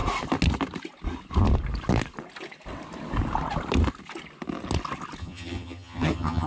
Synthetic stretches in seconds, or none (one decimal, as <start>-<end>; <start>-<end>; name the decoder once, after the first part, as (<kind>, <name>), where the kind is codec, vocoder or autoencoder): 5.2-6.5 (vocoder, HiFi-GAN)